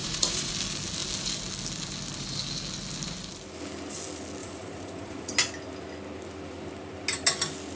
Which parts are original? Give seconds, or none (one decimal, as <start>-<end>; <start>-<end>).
0.5-4.4; 5.3-7.8